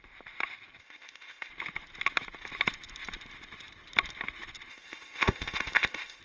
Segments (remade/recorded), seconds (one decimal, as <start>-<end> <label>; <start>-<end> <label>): 0.0-0.8 recorded; 0.8-1.5 remade; 1.5-4.7 recorded; 4.7-6.2 remade